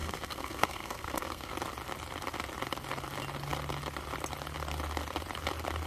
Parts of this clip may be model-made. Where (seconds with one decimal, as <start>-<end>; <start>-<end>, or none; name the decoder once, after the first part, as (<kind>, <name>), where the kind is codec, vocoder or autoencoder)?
0.0-1.5 (codec, SNAC)